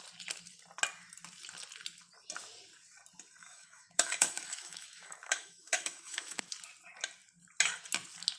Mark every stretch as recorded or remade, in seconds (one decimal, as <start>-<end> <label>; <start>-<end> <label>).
0.0-3.4 recorded; 3.4-6.5 remade; 6.5-8.4 recorded